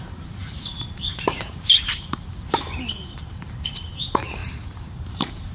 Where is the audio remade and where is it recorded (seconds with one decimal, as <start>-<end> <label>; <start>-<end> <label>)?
0.0-4.4 remade; 4.4-5.1 recorded; 5.1-5.5 remade